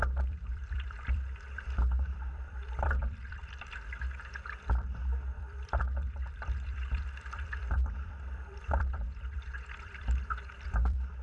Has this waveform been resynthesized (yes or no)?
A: yes